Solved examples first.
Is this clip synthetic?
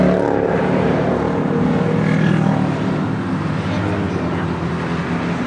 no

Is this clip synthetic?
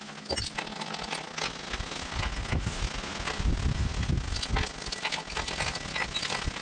no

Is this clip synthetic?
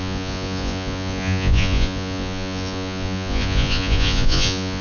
yes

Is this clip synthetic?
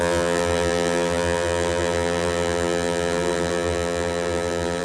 yes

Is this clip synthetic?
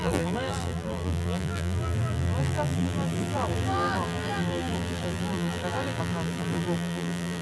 yes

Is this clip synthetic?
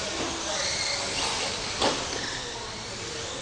no